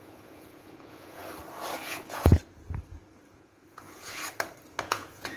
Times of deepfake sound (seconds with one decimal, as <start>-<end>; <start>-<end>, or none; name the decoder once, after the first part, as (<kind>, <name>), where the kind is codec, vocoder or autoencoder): 0.0-1.2 (vocoder, Vocos); 1.8-2.3; 3.3-4.2; 4.8-5.4